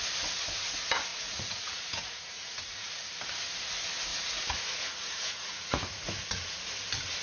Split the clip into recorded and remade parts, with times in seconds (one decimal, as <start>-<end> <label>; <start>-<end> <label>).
0.0-1.1 recorded; 1.1-3.0 remade; 3.0-4.1 recorded; 4.1-6.7 remade; 6.7-7.2 recorded